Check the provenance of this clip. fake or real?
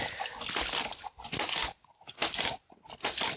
real